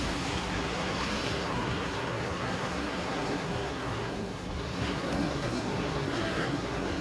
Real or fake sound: fake